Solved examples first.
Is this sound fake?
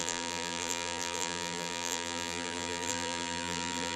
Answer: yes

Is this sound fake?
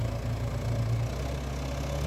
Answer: no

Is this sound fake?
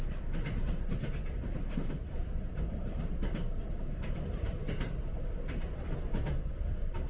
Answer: yes